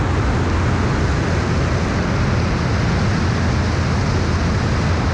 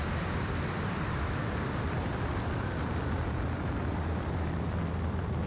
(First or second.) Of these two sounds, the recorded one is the first